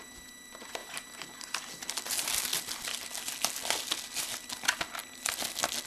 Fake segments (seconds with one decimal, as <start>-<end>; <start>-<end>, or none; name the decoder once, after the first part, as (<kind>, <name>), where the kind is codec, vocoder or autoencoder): none